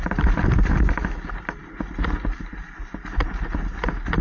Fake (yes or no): no